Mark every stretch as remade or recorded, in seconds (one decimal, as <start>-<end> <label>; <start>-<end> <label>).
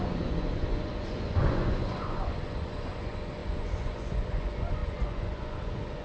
0.0-6.0 remade